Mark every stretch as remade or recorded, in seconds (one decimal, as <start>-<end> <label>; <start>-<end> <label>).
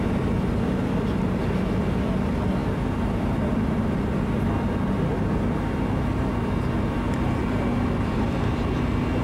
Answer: 0.0-2.6 recorded; 2.6-3.8 remade; 3.8-9.2 recorded